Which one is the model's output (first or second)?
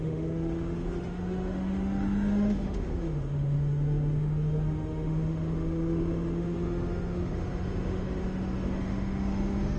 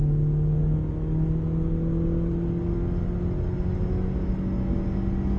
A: first